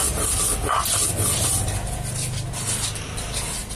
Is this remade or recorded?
recorded